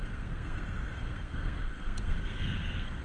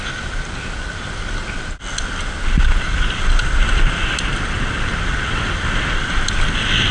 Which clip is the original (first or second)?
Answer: second